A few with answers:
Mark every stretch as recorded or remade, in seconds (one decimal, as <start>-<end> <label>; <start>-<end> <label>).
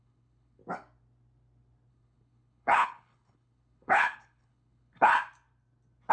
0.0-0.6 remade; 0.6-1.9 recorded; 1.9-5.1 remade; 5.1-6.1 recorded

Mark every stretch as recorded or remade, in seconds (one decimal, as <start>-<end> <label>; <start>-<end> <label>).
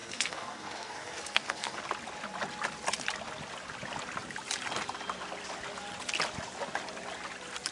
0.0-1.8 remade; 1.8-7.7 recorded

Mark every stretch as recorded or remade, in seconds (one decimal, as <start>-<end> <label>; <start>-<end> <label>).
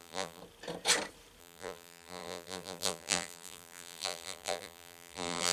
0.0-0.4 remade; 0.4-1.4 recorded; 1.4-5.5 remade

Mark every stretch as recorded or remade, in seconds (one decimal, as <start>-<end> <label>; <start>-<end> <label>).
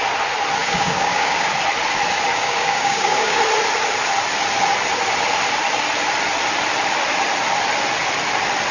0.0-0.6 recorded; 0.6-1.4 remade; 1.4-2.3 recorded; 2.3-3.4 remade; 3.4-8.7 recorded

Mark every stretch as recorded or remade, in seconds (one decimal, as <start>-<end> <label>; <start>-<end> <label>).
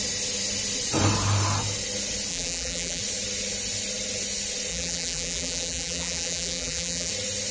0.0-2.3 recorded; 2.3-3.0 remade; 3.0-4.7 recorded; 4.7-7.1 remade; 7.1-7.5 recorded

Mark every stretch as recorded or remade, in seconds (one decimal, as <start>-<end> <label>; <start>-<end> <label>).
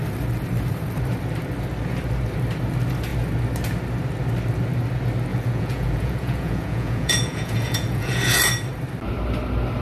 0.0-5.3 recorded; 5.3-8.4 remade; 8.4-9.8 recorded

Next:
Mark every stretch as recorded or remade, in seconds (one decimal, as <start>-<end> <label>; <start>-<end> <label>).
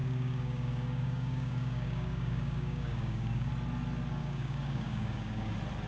0.0-3.5 remade; 3.5-4.2 recorded; 4.2-5.5 remade; 5.5-5.9 recorded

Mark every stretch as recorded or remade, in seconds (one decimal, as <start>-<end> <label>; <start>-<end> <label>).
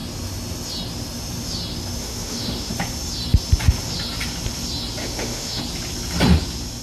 0.0-2.0 recorded; 2.0-2.7 remade; 2.7-5.0 recorded; 5.0-5.6 remade; 5.6-6.8 recorded